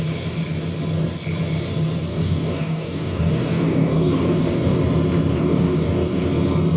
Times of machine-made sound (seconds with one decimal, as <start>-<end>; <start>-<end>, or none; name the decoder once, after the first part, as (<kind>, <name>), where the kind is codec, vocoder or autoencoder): 2.1-4.8 (codec, DAC); 5.3-6.3